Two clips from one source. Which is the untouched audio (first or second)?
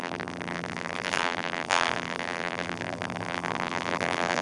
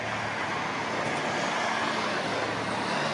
second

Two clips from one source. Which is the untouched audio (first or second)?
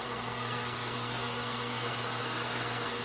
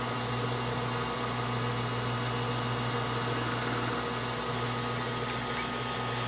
second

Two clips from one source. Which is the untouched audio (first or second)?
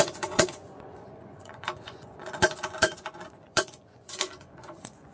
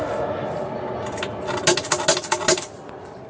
second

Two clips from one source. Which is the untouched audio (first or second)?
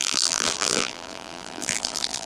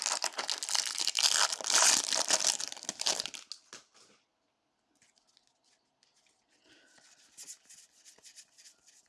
second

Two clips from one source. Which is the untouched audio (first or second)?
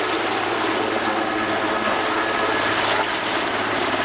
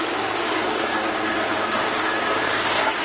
first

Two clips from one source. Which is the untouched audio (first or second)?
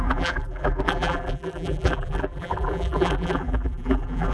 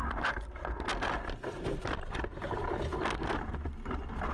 second